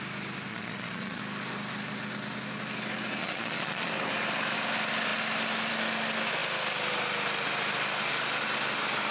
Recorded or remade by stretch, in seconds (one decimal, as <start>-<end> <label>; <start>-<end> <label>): 0.0-0.5 recorded; 0.5-1.2 remade; 1.2-3.2 recorded; 3.2-3.9 remade; 3.9-9.1 recorded